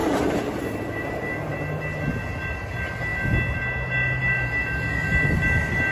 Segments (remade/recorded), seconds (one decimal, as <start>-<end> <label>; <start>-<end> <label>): 0.0-1.5 remade; 1.5-5.9 recorded